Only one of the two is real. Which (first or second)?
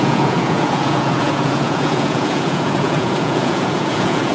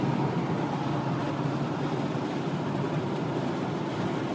second